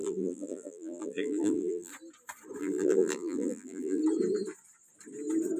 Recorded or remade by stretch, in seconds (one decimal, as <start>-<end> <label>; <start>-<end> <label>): 0.0-1.9 remade; 1.9-2.6 recorded; 2.6-4.0 remade; 4.0-5.6 recorded